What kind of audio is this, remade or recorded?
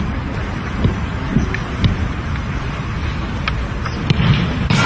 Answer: recorded